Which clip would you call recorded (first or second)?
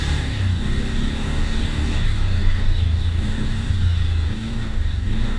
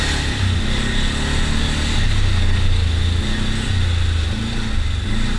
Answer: second